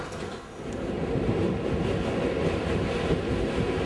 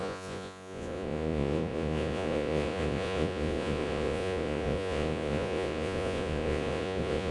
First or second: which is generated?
second